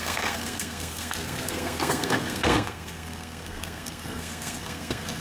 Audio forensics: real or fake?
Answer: fake